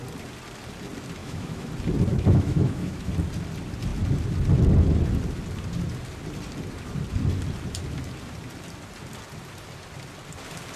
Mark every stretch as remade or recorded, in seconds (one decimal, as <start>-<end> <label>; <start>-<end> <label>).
0.0-1.2 recorded; 1.2-1.7 remade; 1.7-2.1 recorded; 2.1-3.1 remade; 3.1-10.8 recorded